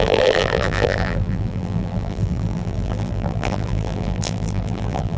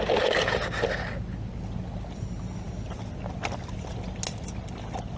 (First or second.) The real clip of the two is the second